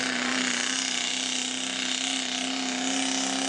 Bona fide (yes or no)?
yes